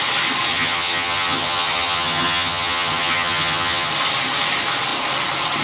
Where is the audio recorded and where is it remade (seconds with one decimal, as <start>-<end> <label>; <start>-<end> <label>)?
0.0-0.5 recorded; 0.5-3.9 remade; 3.9-5.6 recorded